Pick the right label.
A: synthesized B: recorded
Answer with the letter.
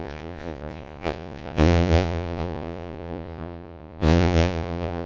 A